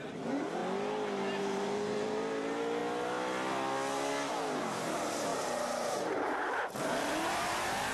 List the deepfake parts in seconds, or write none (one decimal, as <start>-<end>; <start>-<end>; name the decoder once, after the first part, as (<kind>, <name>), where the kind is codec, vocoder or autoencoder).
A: 0.0-0.6 (vocoder, BigVGAN v2); 1.4-2.8; 4.6-5.3; 5.9-7.9